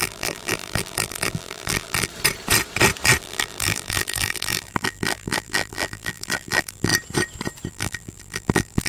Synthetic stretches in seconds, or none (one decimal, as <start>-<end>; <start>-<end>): 0.0-2.1; 3.2-6.9; 7.7-8.9